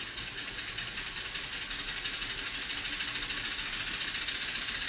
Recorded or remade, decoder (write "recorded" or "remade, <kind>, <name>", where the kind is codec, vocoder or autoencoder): recorded